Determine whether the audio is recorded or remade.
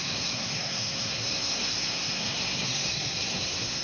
remade